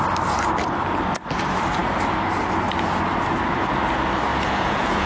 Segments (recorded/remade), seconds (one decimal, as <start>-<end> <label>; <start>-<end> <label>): 0.0-4.3 recorded; 4.3-5.1 remade